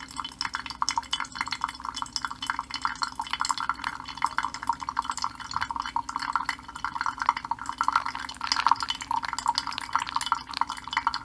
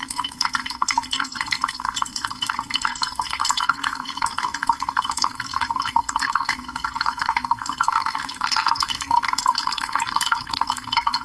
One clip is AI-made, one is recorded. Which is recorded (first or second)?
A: first